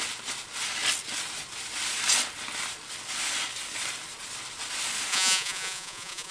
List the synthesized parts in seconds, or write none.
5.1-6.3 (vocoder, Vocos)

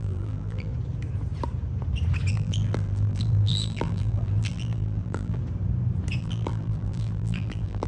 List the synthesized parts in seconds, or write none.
0.0-0.7 (vocoder, BigVGAN v2); 2.3-5.4; 6.2-7.9

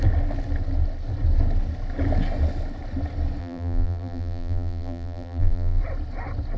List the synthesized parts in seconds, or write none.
3.4-5.8 (vocoder, BigVGAN v2)

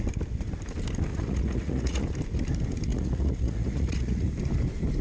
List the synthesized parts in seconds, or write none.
1.1-2.0 (vocoder, Vocos); 2.9-4.3

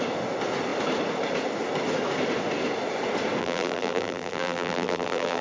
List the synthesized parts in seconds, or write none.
3.4-5.4 (vocoder, BigVGAN v2)

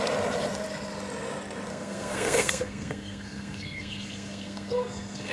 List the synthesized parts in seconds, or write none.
1.7-5.3 (codec, SNAC)